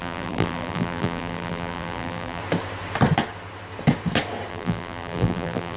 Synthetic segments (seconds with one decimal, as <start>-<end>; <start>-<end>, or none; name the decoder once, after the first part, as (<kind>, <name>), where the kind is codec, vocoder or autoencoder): 0.0-2.4 (vocoder, BigVGAN v2); 4.5-5.8